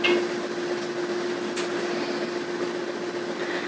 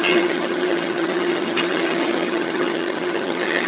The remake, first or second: second